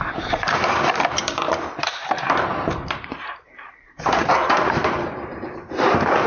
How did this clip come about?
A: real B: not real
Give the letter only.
B